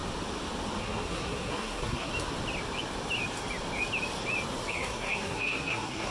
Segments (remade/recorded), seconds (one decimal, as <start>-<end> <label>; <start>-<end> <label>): 0.0-0.8 recorded; 0.8-2.1 remade; 2.1-4.7 recorded; 4.7-6.1 remade